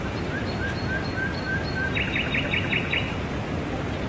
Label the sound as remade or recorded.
remade